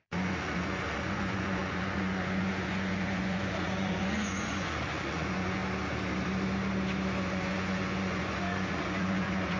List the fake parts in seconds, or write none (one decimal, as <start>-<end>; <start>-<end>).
0.0-5.6; 7.2-9.6